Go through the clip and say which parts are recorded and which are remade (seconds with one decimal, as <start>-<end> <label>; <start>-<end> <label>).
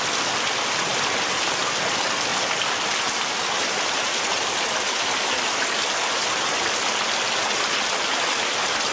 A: 0.0-8.9 recorded